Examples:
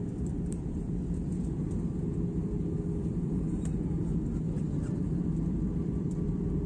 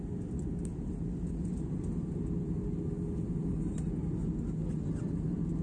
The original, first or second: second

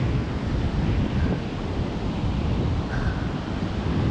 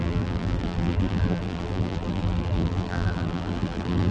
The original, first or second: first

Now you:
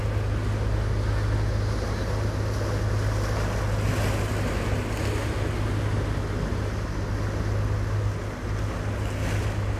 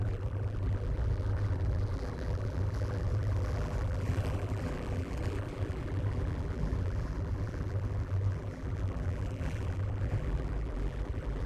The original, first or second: first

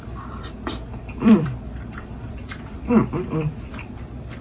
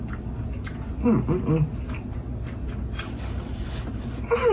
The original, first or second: second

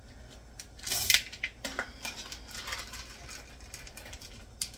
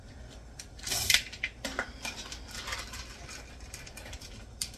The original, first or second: first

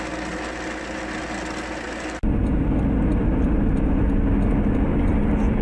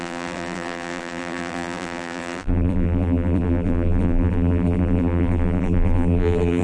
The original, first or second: first